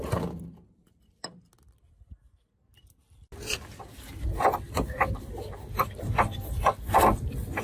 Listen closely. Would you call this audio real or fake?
real